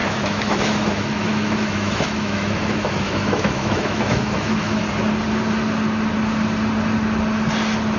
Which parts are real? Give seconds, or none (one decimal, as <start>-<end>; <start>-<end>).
4.8-8.0